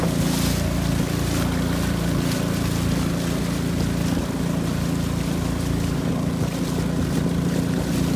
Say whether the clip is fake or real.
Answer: real